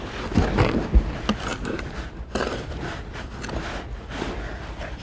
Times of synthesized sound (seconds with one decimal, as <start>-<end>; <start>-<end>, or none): 1.5-3.3